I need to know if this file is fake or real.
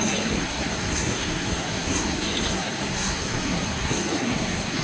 fake